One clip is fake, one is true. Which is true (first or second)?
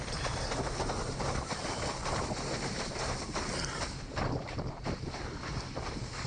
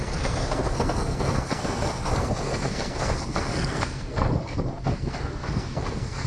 first